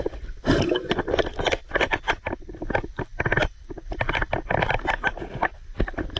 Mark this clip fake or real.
fake